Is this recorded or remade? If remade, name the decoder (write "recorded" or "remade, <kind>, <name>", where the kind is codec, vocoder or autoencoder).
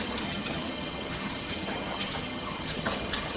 remade, vocoder, HiFi-GAN